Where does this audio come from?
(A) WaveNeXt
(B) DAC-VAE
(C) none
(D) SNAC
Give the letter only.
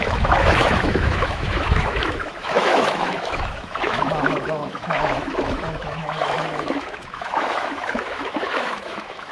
B